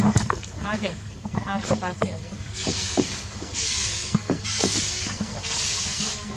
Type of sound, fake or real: fake